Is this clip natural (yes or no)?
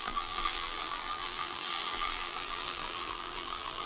no